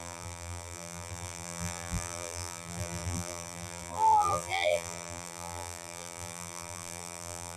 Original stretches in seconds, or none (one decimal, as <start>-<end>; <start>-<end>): none